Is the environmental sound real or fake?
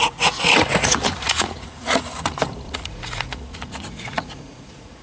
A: fake